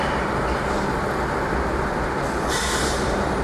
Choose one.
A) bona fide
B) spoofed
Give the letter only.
A